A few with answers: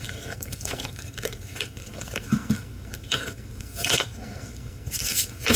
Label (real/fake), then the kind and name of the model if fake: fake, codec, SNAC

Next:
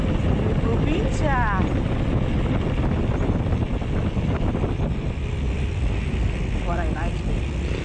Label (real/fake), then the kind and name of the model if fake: real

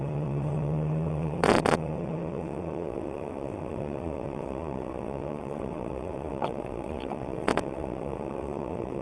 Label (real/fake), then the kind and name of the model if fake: fake, vocoder, WaveNeXt